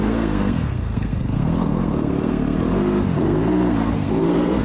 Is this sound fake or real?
fake